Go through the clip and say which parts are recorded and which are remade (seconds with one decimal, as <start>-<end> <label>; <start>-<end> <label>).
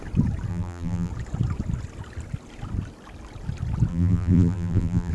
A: 0.0-0.5 recorded; 0.5-1.1 remade; 1.1-3.9 recorded; 3.9-5.1 remade